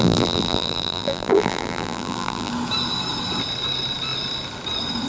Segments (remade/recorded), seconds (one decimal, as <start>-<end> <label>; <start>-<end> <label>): 0.0-2.5 remade; 2.5-5.1 recorded

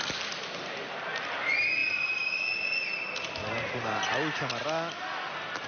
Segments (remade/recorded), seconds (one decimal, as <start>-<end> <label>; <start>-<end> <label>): 0.0-5.7 recorded

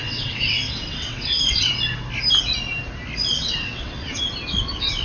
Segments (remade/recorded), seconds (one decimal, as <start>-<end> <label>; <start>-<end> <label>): 0.0-1.7 remade; 1.7-3.3 recorded; 3.3-4.2 remade; 4.2-5.0 recorded

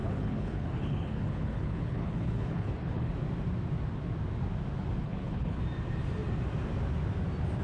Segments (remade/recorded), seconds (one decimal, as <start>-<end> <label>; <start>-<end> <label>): 0.0-3.1 remade; 3.1-5.0 recorded; 5.0-5.6 remade; 5.6-7.6 recorded

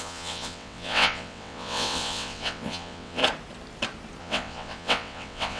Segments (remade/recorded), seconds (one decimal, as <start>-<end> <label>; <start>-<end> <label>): 0.0-3.2 remade; 3.2-4.2 recorded; 4.2-5.6 remade